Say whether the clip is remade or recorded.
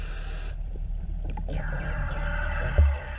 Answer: remade